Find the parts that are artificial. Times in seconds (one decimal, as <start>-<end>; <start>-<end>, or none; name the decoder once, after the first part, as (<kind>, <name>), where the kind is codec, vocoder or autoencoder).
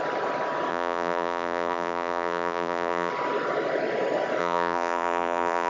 0.7-3.1 (vocoder, BigVGAN v2); 4.4-5.7